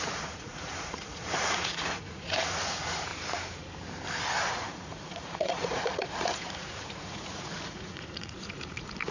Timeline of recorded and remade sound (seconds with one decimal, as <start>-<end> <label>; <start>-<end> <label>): 0.0-3.1 remade; 3.1-4.5 recorded; 4.5-9.1 remade